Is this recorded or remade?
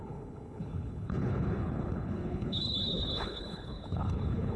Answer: remade